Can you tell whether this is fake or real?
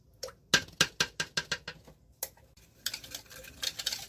real